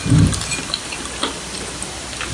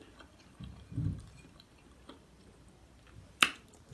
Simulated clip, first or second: second